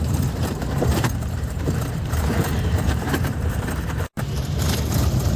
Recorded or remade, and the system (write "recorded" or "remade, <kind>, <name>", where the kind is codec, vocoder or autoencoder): remade, vocoder, BigVGAN v2